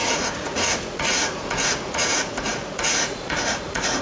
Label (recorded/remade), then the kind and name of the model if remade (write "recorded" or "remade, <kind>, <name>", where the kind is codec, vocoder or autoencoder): remade, vocoder, Vocos